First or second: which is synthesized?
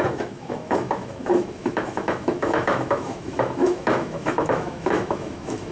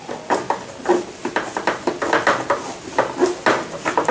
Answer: first